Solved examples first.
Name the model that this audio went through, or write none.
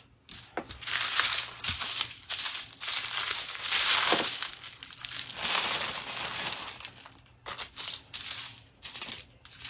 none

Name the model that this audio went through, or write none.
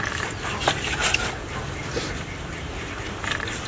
vocoder, BigVGAN v2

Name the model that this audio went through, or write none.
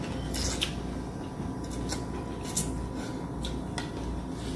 none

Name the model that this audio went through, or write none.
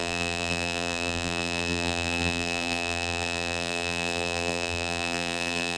vocoder, BigVGAN v2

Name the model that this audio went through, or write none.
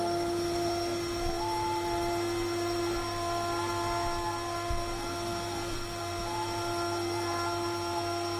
vocoder, BigVGAN v2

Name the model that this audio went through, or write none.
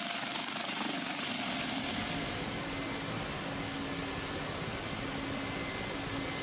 none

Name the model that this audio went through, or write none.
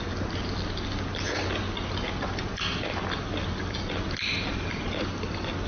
none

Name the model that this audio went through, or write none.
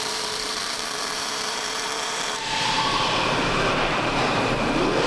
vocoder, BigVGAN v2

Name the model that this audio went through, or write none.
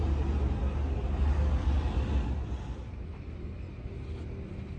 none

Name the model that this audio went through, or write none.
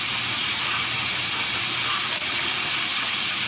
none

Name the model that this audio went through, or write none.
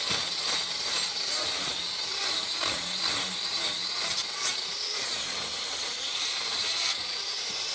vocoder, BigVGAN v2